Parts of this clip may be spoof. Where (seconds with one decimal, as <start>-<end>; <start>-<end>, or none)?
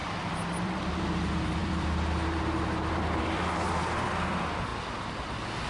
0.0-4.7